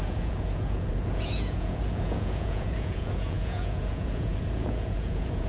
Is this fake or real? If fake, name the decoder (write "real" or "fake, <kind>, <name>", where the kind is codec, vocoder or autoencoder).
fake, vocoder, Vocos